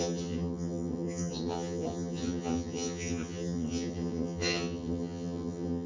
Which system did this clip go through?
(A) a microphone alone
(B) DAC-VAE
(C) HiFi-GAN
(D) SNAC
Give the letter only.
C